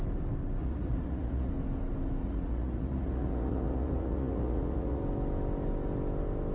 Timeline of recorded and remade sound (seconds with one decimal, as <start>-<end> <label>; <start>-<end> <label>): 0.0-0.6 recorded; 0.6-1.5 remade; 1.5-2.2 recorded; 2.2-5.0 remade; 5.0-6.5 recorded

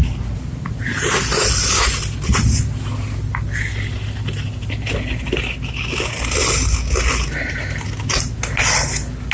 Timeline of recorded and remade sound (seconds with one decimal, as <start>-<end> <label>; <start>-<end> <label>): 0.0-9.3 recorded

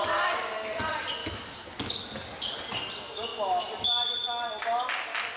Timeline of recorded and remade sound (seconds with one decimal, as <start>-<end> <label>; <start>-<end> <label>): 0.0-1.2 recorded; 1.2-1.7 remade; 1.7-5.4 recorded

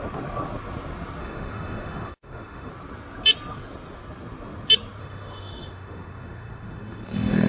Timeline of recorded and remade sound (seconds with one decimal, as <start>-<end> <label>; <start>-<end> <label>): 0.0-1.2 recorded; 1.2-2.7 remade; 2.7-5.0 recorded; 5.0-7.5 remade

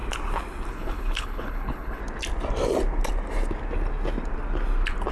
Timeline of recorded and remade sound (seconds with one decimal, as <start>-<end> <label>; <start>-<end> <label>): 0.0-0.7 recorded; 0.7-2.0 remade; 2.0-5.1 recorded

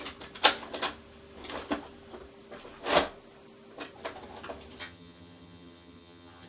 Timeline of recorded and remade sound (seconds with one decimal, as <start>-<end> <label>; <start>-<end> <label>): 0.0-4.8 recorded; 4.8-6.5 remade